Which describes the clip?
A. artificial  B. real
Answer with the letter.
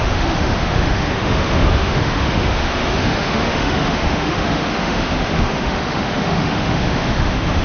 A